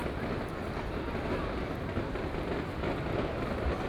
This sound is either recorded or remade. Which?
recorded